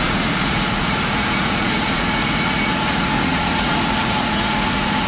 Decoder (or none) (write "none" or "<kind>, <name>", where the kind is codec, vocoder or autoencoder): vocoder, Vocos